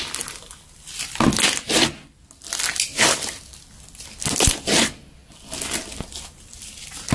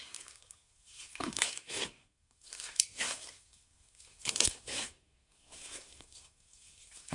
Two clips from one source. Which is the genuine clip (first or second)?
first